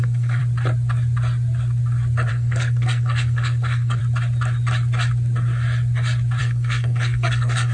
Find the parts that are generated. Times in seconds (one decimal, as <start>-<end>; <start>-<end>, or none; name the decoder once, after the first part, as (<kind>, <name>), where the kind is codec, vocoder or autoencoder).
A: 0.0-0.4 (codec, SNAC); 2.3-4.0; 6.4-7.7